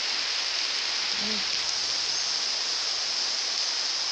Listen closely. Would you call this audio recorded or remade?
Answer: recorded